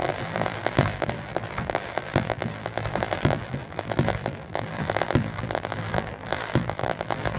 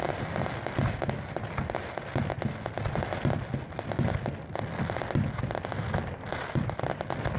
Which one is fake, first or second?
first